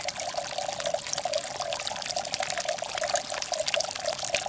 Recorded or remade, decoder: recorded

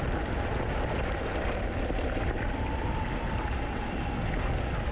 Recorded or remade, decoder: recorded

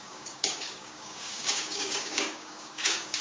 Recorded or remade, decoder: remade, codec, DAC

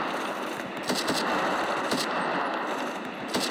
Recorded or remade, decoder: recorded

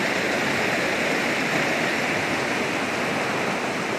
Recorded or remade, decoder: recorded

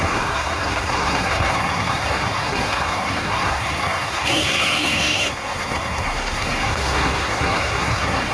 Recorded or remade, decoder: remade, codec, SNAC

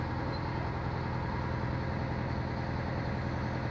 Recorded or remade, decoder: recorded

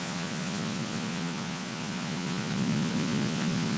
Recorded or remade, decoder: remade, vocoder, Vocos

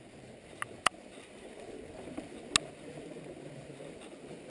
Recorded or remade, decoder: recorded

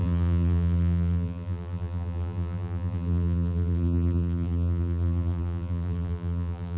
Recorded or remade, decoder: remade, vocoder, BigVGAN v2